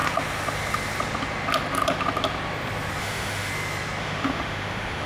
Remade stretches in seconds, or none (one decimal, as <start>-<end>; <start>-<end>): 3.0-3.5; 4.0-5.1